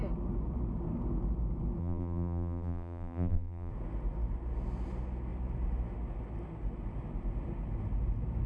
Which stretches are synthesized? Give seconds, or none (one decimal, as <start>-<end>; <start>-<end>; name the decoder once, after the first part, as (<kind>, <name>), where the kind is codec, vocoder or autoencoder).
1.8-3.7 (vocoder, BigVGAN v2)